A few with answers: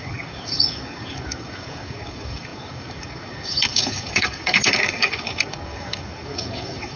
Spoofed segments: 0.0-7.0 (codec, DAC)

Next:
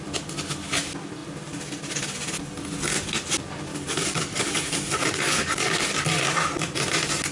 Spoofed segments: 3.7-6.0 (codec, DAC)

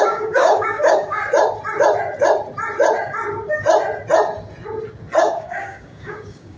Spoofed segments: 0.0-1.2 (codec, DAC); 5.2-6.6

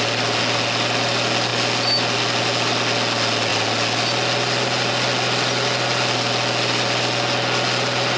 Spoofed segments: none

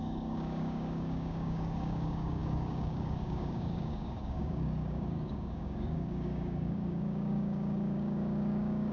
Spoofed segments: 0.0-8.9 (codec, DAC)

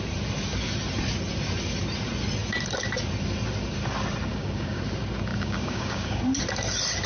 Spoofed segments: 4.3-4.8 (codec, DAC); 5.3-6.2

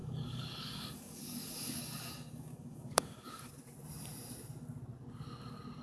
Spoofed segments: 0.0-3.5 (codec, DAC)